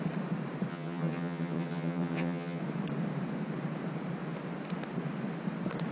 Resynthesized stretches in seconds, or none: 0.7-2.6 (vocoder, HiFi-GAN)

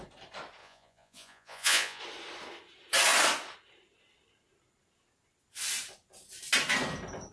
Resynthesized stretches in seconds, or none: 0.6-2.0 (vocoder, Vocos)

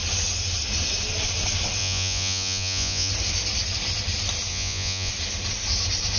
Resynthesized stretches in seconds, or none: 1.8-3.1 (vocoder, Vocos); 4.5-5.1

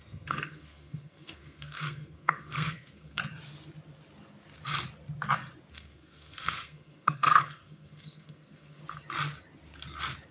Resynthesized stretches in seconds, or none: 0.0-3.2 (codec, SNAC); 5.7-8.8

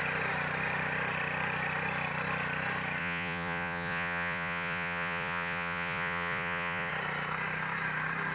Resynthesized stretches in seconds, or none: 3.0-6.9 (vocoder, Vocos)

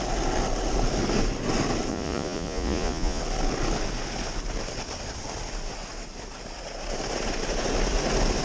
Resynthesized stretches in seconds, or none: 1.9-3.2 (vocoder, Vocos)